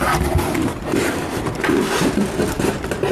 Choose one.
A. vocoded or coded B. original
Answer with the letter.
B